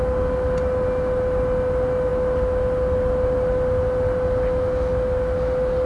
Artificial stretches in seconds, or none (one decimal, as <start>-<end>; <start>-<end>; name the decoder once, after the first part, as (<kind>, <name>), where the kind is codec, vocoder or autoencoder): none